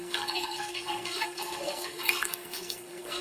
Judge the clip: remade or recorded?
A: remade